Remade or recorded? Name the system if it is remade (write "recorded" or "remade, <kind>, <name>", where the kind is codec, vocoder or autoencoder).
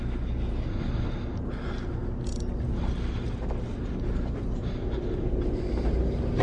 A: recorded